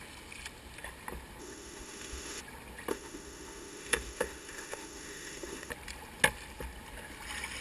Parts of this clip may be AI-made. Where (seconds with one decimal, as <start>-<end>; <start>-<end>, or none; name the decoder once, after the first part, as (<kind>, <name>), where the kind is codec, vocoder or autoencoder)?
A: 1.4-2.4 (autoencoder, DAC-VAE); 2.9-5.7